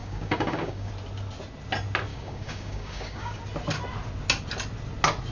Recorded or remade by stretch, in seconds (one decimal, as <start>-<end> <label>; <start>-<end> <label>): 0.0-0.9 remade; 0.9-2.1 recorded; 2.1-3.4 remade; 3.4-5.3 recorded